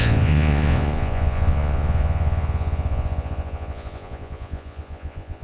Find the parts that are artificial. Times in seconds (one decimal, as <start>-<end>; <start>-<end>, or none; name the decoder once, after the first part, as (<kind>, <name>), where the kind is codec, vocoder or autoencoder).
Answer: 0.0-5.4 (vocoder, Vocos)